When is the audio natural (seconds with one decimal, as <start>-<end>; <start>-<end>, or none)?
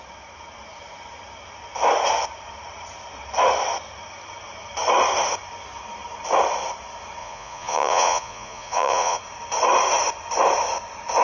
0.0-7.2; 9.2-11.2